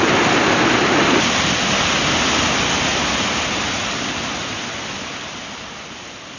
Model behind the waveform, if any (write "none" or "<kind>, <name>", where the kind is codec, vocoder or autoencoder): none